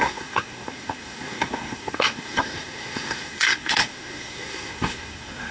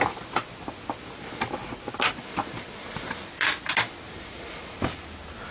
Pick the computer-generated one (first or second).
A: first